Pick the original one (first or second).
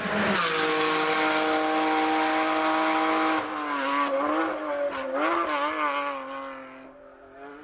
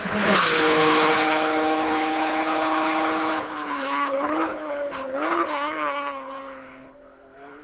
first